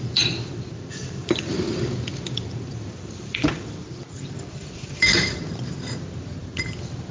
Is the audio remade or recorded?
remade